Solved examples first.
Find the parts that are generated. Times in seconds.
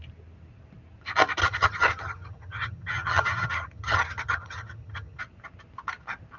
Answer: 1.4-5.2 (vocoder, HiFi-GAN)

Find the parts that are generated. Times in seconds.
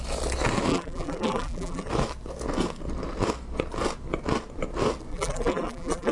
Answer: 0.7-1.9 (vocoder, BigVGAN v2); 5.1-6.1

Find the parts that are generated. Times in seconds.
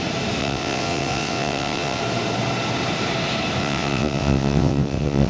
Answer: 0.4-2.0 (vocoder, WaveNeXt); 3.6-5.3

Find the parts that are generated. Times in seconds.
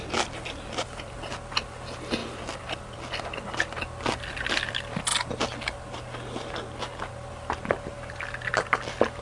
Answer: none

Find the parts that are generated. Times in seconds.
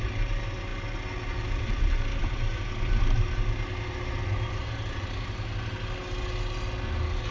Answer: none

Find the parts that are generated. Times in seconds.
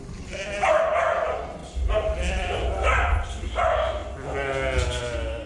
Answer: none